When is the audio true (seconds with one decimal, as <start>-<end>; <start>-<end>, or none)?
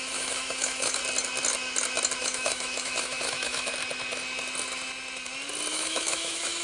1.0-2.2; 3.7-5.7